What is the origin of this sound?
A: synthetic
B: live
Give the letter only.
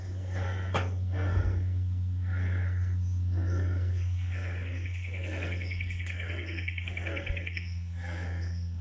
A